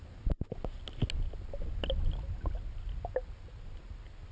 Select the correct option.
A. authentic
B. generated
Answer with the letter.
A